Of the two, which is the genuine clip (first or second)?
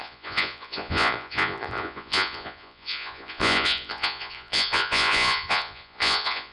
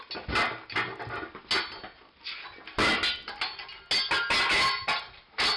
second